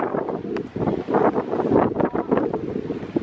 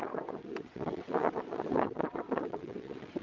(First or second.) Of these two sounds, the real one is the first